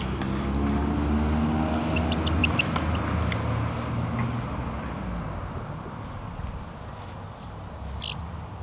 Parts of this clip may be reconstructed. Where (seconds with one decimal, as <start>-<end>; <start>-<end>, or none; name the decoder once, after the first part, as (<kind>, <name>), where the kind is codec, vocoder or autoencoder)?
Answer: none